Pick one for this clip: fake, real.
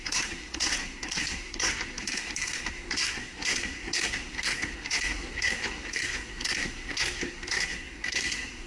fake